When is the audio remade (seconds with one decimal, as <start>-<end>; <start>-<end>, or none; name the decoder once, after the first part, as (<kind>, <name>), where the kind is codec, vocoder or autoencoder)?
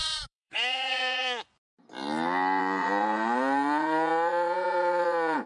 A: 0.0-1.7 (vocoder, Vocos); 2.6-5.5